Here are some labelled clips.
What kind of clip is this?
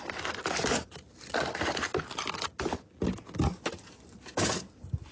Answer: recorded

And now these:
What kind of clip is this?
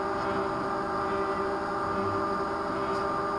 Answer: recorded